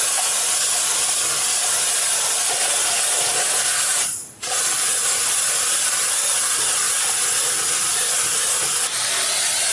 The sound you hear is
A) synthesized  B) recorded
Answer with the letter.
B